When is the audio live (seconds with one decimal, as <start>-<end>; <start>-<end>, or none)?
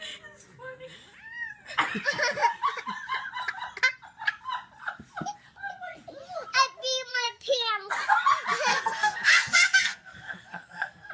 0.0-7.1; 7.7-8.7